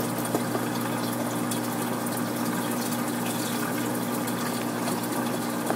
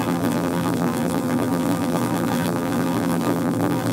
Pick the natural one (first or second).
first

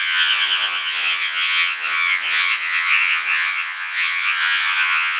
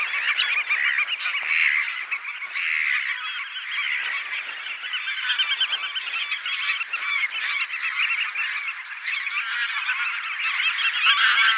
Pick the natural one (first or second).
second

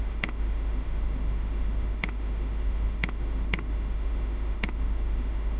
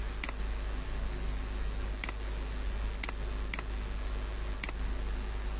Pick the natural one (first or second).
second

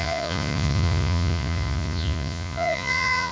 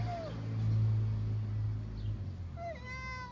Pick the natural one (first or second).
second